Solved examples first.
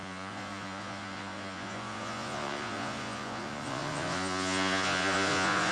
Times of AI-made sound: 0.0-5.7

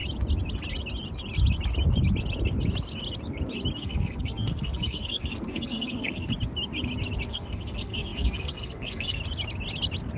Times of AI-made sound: 3.8-6.3; 7.3-9.2

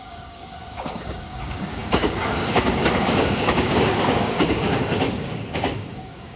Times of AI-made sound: 0.0-6.4

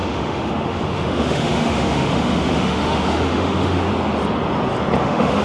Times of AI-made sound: 0.0-3.9; 5.0-5.4

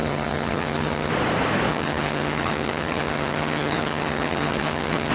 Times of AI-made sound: 0.0-1.1; 1.7-5.1